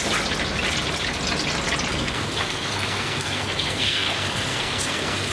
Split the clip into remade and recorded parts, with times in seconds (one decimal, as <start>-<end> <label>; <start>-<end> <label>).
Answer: 0.0-1.9 recorded; 1.9-5.3 remade